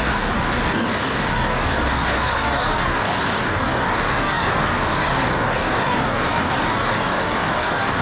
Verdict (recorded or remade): remade